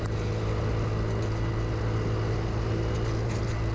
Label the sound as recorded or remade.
recorded